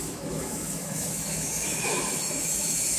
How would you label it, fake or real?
fake